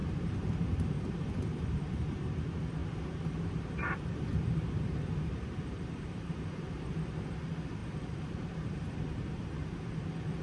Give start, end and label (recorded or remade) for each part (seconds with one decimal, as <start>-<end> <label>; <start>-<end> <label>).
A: 0.0-2.3 remade; 2.3-2.8 recorded; 2.8-6.9 remade; 6.9-7.8 recorded; 7.8-9.9 remade; 9.9-10.4 recorded